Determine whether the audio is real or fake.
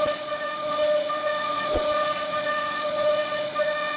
fake